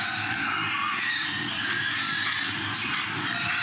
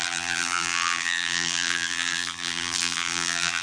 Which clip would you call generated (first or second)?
second